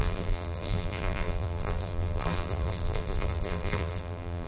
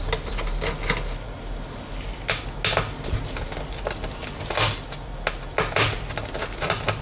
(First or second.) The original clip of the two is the second